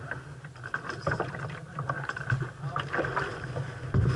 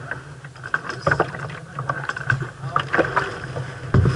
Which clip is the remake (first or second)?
first